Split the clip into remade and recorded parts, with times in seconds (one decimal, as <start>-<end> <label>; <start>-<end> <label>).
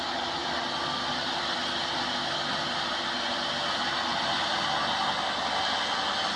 0.0-0.4 recorded; 0.4-2.9 remade; 2.9-3.8 recorded; 3.8-5.5 remade; 5.5-6.4 recorded